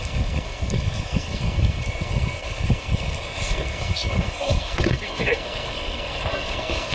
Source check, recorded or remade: remade